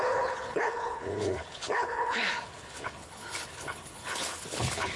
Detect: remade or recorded remade